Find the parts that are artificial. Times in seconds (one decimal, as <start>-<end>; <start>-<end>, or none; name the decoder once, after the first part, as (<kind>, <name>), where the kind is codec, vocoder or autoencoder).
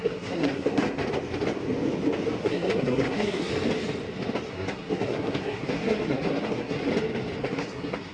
0.0-1.0 (codec, SNAC); 2.4-3.5; 4.5-6.9; 7.4-8.1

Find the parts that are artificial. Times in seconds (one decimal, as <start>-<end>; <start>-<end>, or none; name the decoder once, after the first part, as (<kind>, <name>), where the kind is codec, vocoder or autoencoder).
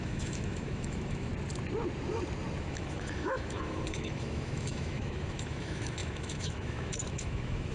0.0-1.3 (autoencoder, DAC-VAE); 2.6-7.7